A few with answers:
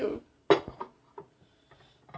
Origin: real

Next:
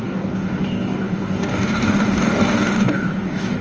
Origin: fake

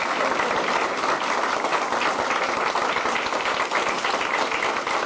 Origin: real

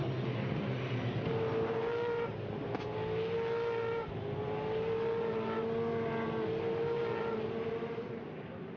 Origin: real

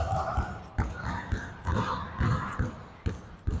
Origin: real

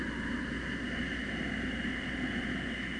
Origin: real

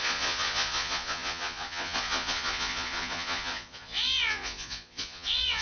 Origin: fake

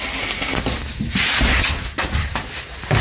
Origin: real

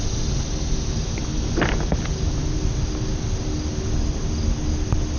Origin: real